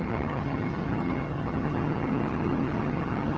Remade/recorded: remade